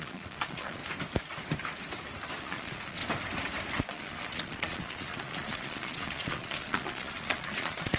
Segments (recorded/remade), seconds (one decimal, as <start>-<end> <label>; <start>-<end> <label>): 0.0-0.8 remade; 0.8-2.4 recorded; 2.4-3.0 remade; 3.0-3.8 recorded; 3.8-8.0 remade